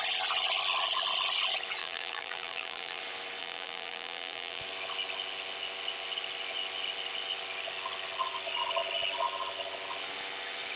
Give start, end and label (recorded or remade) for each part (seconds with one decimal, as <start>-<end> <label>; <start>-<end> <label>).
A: 0.0-1.8 recorded; 1.8-3.0 remade; 3.0-3.4 recorded; 3.4-4.6 remade; 4.6-10.8 recorded